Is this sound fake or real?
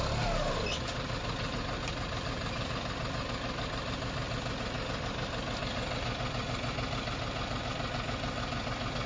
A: real